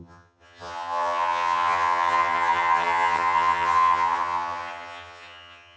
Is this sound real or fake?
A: fake